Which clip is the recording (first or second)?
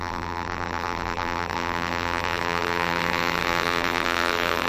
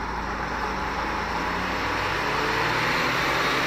second